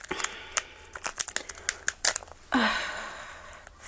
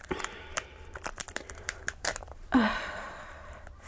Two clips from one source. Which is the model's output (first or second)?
second